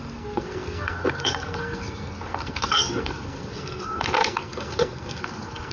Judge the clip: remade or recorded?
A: remade